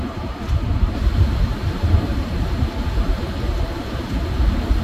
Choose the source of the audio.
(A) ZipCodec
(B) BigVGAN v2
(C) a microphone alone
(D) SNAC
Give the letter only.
B